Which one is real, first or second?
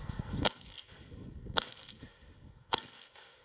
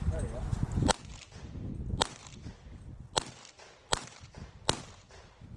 second